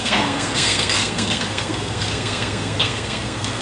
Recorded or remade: remade